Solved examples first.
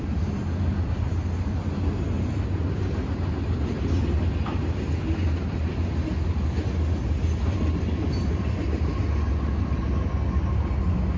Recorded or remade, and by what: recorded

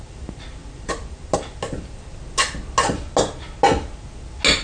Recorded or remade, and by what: recorded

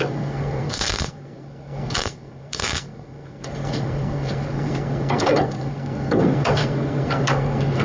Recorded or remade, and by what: remade, codec, SNAC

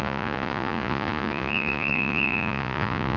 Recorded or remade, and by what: remade, vocoder, Vocos